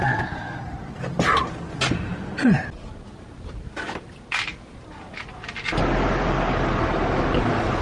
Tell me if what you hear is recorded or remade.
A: recorded